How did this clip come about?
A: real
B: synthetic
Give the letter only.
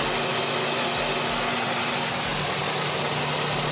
A